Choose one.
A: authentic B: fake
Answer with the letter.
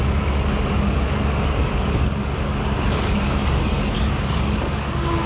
B